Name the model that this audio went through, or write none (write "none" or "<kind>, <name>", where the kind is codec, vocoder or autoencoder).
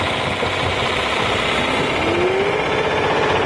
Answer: none